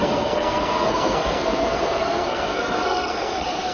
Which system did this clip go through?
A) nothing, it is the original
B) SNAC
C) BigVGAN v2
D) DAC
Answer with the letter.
B